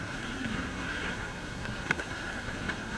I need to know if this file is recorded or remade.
remade